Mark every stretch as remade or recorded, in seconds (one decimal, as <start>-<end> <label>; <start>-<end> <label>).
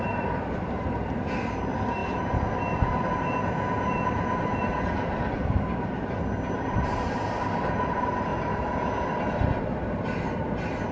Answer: 0.0-8.3 remade; 8.3-9.3 recorded; 9.3-10.9 remade